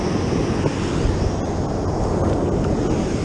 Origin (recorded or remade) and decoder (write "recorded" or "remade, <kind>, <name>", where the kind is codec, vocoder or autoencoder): recorded